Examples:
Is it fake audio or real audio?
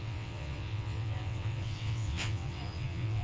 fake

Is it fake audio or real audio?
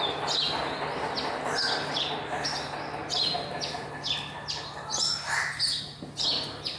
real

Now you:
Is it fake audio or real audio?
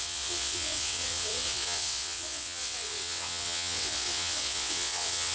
fake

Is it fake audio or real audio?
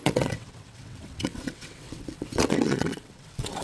fake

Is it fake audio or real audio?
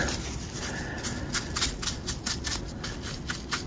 real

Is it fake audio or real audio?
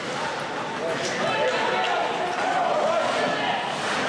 real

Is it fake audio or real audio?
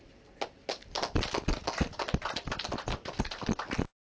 real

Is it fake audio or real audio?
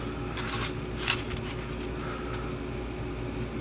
real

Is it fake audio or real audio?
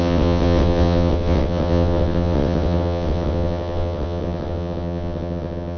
fake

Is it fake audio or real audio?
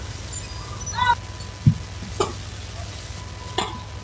real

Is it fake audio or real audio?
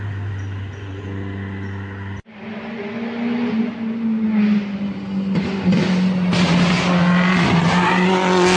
real